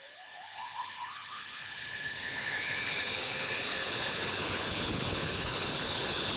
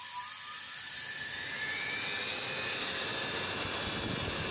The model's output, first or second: first